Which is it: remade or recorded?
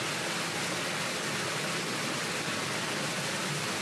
recorded